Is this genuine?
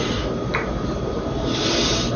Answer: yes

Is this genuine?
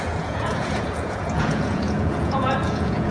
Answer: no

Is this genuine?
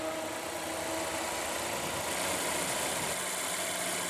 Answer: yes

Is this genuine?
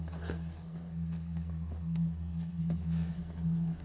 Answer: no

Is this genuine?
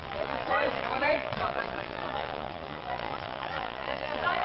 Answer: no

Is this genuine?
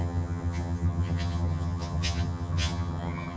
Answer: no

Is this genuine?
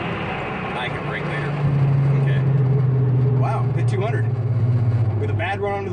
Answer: yes